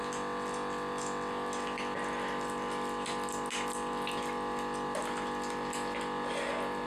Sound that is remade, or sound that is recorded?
recorded